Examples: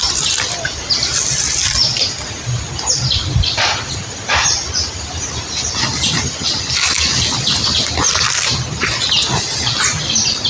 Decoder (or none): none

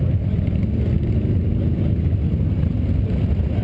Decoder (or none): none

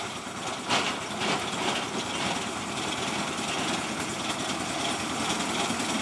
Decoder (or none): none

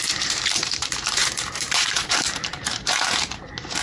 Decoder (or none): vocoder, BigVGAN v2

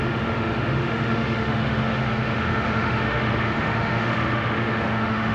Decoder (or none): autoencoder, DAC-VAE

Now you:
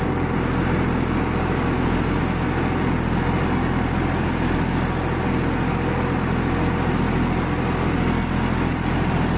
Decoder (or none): none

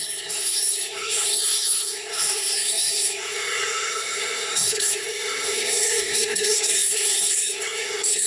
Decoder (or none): codec, SNAC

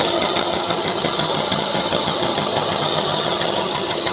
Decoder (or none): vocoder, HiFi-GAN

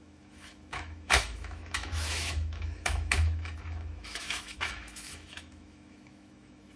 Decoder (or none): autoencoder, DAC-VAE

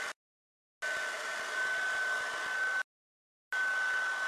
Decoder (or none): none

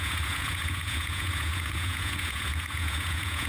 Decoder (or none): vocoder, Vocos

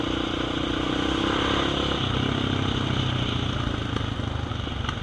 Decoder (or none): none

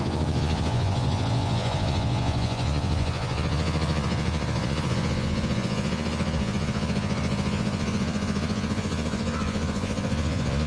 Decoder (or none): vocoder, Vocos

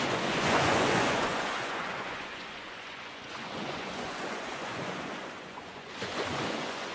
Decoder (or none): vocoder, Vocos